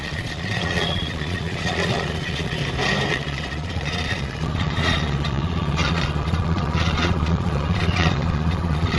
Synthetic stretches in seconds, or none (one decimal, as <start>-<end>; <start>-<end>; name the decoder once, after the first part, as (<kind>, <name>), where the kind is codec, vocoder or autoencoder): 0.0-2.6 (vocoder, Vocos); 3.1-9.0